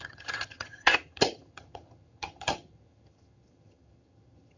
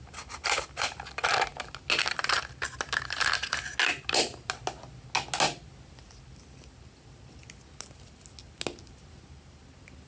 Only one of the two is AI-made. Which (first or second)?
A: first